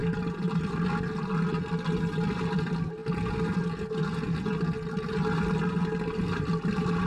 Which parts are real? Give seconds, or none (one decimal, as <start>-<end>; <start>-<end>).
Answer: 0.0-7.1